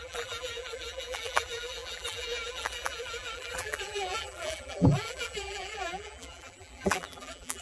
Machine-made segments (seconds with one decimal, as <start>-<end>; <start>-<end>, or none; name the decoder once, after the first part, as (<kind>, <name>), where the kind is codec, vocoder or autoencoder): 0.0-7.6 (vocoder, BigVGAN v2)